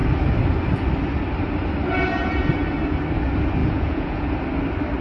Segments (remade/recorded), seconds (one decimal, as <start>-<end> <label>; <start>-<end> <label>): 0.0-3.6 recorded; 3.6-4.3 remade; 4.3-5.0 recorded